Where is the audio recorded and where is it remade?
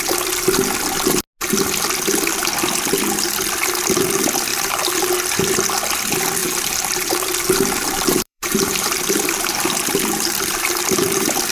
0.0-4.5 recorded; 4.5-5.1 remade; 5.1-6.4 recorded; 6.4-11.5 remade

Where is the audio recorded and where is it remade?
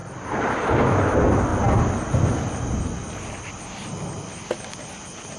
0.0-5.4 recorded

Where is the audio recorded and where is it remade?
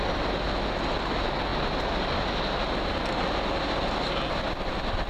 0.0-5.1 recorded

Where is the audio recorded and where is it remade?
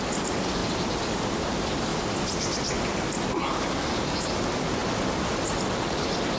0.0-0.6 recorded; 0.6-1.4 remade; 1.4-1.9 recorded; 1.9-3.9 remade; 3.9-6.4 recorded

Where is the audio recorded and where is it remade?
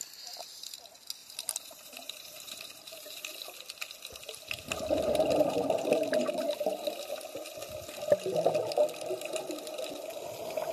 0.0-1.2 recorded; 1.2-3.2 remade; 3.2-10.7 recorded